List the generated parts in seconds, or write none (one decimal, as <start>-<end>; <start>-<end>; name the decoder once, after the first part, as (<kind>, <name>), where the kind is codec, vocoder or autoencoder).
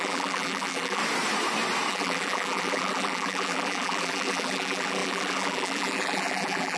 0.0-1.0 (vocoder, BigVGAN v2); 1.9-6.8